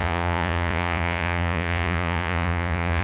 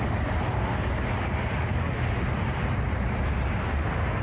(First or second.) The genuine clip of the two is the second